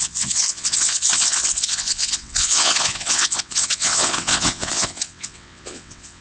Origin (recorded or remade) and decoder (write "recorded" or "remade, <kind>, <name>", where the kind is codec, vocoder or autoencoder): remade, vocoder, WaveNeXt